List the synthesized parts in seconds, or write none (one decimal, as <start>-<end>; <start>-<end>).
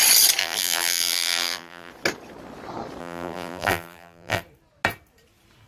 0.4-1.9; 3.0-4.4